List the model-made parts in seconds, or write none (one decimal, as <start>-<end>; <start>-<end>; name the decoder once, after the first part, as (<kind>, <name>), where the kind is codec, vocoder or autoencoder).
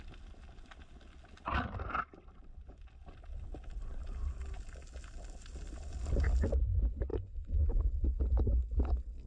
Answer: 7.1-7.8 (vocoder, Vocos)